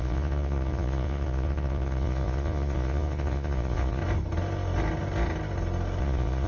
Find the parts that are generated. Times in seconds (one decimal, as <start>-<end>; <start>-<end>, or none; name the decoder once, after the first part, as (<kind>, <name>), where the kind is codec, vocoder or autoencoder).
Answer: 0.0-4.0 (vocoder, Vocos); 6.0-6.5